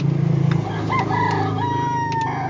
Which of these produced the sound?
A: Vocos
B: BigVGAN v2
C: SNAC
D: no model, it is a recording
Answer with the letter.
D